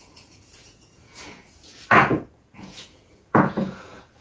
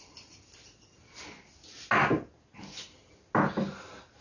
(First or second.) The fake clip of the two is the first